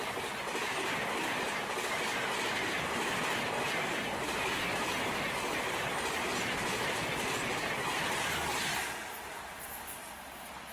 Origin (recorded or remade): recorded